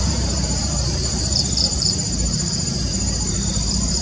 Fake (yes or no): yes